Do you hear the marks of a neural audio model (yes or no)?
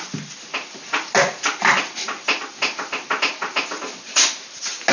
no